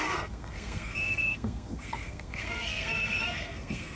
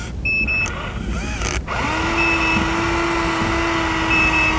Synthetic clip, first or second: first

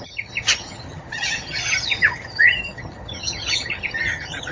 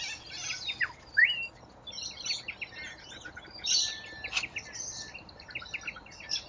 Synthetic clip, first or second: first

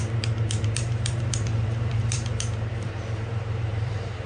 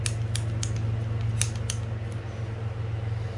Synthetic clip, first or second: first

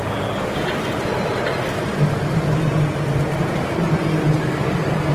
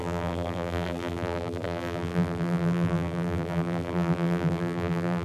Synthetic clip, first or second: second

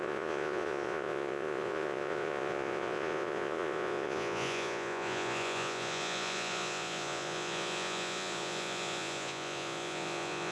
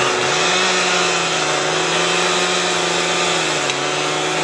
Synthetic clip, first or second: first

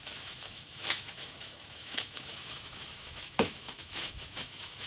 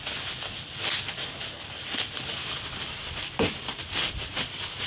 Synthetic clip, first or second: first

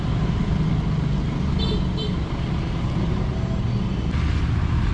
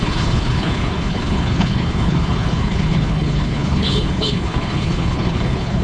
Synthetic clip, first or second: second